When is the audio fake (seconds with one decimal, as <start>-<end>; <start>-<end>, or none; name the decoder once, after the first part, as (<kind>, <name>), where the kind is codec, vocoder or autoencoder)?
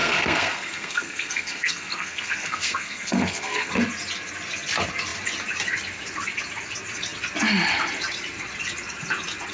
0.0-3.7 (codec, SNAC)